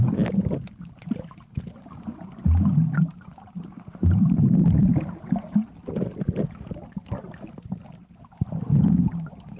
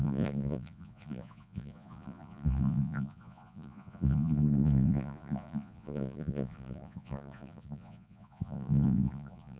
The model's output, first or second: second